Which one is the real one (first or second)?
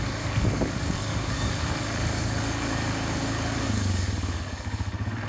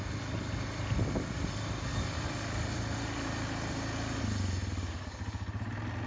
second